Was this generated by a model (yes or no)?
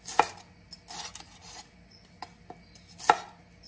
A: no